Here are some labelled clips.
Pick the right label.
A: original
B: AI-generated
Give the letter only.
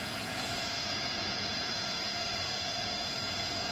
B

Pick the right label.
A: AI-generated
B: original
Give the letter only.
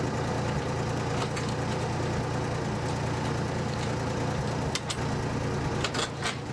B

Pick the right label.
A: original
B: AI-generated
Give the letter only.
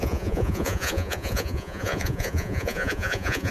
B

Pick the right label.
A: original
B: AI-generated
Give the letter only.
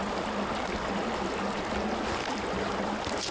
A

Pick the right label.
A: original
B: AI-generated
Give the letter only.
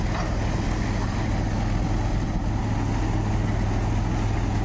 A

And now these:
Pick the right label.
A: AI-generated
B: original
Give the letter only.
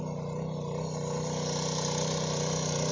B